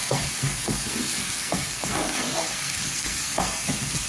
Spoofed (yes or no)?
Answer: yes